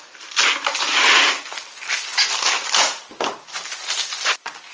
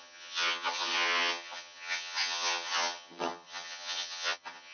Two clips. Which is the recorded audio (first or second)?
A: first